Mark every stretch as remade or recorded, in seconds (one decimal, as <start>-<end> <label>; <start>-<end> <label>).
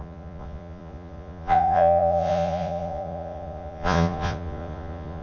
0.0-5.2 remade